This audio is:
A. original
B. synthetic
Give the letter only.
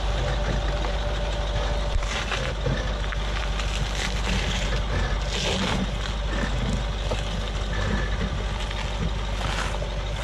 A